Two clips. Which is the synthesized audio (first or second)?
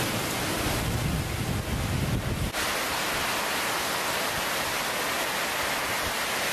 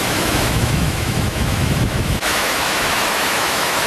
second